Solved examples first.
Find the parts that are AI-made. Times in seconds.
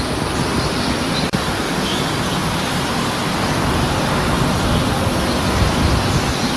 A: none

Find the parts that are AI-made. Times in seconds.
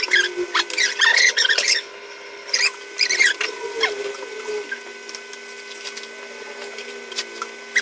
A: 1.1-2.6 (codec, HILCodec)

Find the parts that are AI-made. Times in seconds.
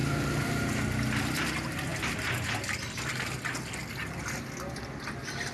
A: none